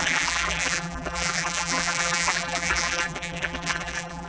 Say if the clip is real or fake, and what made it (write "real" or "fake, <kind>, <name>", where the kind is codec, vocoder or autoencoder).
fake, vocoder, BigVGAN v2